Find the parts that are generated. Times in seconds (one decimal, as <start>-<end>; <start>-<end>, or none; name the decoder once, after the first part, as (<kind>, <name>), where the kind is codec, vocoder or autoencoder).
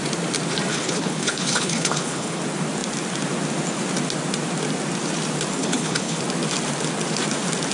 0.7-2.4 (codec, HILCodec); 5.6-6.2